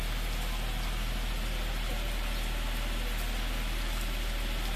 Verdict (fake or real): real